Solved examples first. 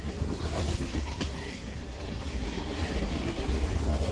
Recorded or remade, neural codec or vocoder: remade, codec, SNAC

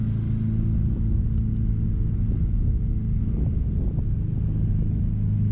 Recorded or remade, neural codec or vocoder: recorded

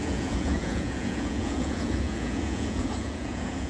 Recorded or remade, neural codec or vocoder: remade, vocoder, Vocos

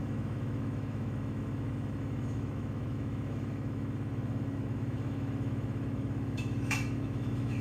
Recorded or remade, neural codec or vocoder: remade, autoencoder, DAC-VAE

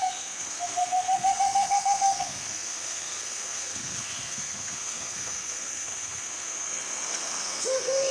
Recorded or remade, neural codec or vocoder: remade, codec, SNAC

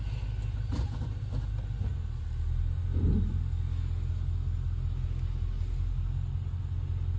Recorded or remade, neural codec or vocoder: recorded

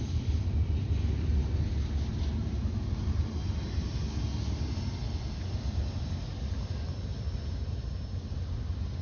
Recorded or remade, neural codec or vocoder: recorded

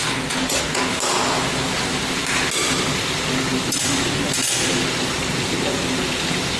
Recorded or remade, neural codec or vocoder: recorded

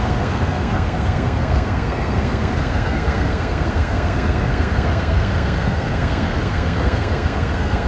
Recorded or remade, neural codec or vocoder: remade, codec, SNAC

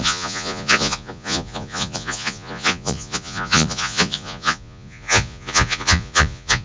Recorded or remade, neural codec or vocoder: remade, vocoder, Vocos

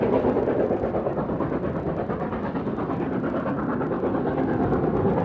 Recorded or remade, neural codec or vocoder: recorded